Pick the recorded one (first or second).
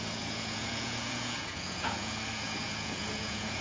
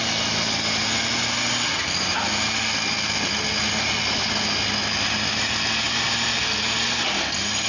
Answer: second